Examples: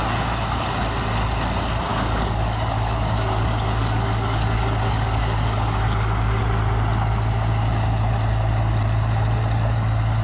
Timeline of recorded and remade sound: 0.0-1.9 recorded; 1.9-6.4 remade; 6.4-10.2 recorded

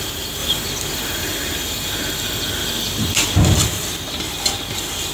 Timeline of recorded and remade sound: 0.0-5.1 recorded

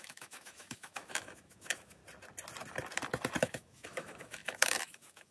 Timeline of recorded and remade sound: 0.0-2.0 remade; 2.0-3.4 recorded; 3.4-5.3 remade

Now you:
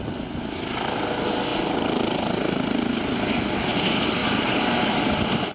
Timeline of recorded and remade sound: 0.0-5.5 recorded

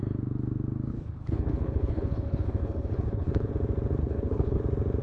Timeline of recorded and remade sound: 0.0-0.9 recorded; 0.9-3.5 remade; 3.5-4.0 recorded; 4.0-4.6 remade; 4.6-5.0 recorded

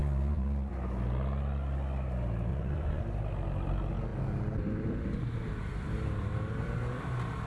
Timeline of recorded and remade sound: 0.0-0.7 remade; 0.7-2.5 recorded; 2.5-3.0 remade; 3.0-7.5 recorded

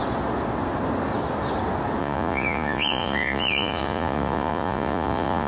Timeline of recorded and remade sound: 0.0-2.0 recorded; 2.0-5.5 remade